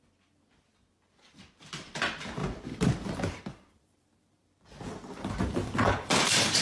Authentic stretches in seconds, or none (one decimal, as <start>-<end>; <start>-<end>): 0.0-2.4